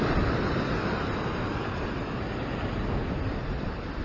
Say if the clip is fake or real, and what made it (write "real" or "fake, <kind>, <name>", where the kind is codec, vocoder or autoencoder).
real